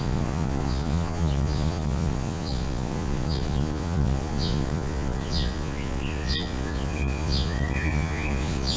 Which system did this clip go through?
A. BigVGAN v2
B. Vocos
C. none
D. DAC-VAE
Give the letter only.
B